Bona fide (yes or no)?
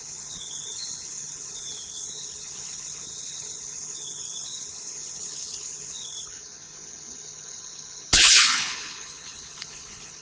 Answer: no